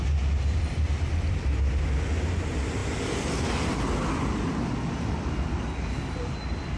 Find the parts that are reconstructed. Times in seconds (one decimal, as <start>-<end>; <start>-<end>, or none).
none